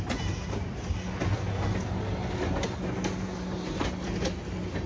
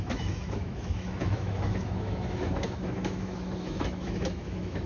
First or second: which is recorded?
first